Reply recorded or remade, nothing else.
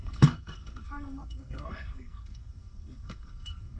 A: remade